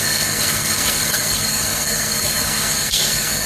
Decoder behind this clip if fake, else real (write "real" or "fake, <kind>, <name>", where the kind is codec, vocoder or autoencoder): fake, codec, SNAC